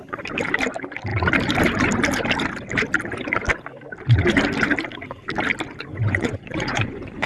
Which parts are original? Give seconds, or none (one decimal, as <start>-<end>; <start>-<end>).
0.0-5.9